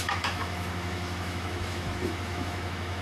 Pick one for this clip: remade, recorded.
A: remade